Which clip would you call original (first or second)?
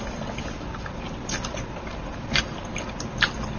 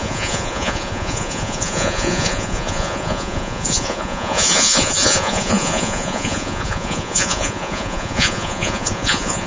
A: first